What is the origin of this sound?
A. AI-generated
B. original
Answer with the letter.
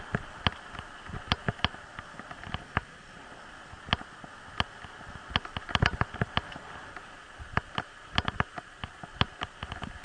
B